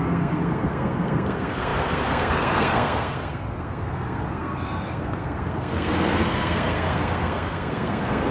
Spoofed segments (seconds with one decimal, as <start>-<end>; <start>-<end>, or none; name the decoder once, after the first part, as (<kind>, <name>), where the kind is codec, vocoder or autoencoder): 0.0-8.3 (codec, SNAC)